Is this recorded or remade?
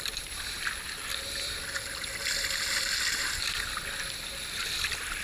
remade